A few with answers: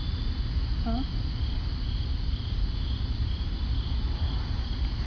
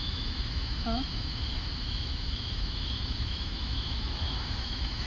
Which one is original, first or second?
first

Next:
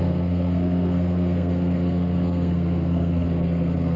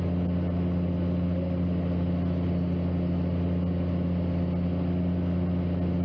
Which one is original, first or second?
second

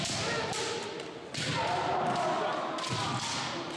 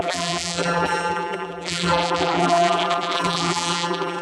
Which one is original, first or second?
first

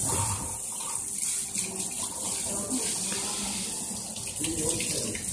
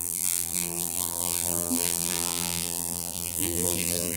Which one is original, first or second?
first